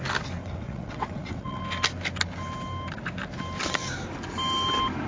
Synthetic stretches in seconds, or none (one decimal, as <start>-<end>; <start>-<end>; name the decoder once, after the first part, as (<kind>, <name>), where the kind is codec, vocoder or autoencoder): 0.4-1.6 (vocoder, WaveNeXt)